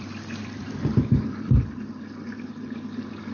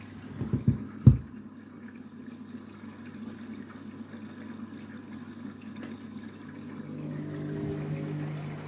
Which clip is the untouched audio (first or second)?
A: second